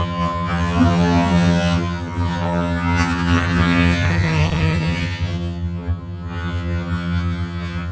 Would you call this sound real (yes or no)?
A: no